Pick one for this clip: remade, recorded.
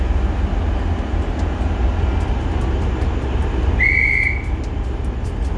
recorded